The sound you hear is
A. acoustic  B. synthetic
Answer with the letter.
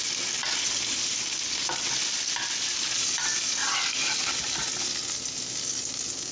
A